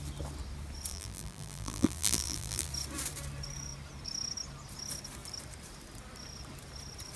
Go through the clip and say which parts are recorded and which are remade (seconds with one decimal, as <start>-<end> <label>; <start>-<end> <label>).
0.0-0.9 recorded; 0.9-2.7 remade; 2.7-7.2 recorded